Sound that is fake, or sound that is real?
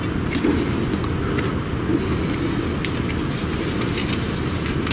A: real